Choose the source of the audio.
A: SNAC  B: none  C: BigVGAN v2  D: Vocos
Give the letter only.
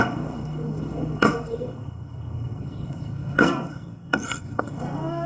A